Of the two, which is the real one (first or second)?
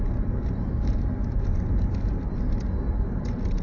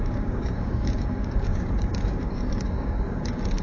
first